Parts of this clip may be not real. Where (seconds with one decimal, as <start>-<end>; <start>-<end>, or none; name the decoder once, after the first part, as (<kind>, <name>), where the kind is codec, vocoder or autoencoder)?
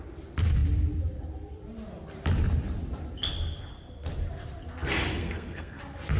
5.2-5.8 (codec, SNAC)